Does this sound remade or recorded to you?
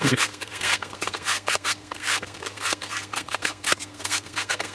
remade